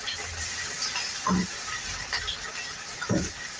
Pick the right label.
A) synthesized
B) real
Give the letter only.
B